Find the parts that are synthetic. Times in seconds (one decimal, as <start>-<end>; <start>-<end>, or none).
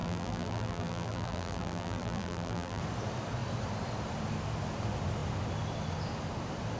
0.0-2.8